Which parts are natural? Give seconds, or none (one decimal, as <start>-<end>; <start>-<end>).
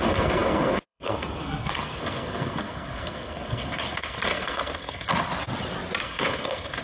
5.1-6.0